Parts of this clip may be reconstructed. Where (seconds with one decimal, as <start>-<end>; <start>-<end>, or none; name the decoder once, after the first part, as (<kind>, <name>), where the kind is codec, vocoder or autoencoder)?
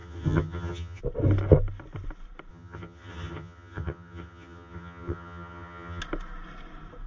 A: 0.0-1.0 (vocoder, HiFi-GAN); 2.5-6.0